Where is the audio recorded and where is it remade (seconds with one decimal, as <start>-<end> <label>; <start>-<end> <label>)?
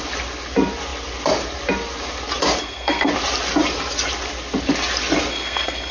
0.0-2.6 recorded; 2.6-3.1 remade; 3.1-5.3 recorded; 5.3-5.9 remade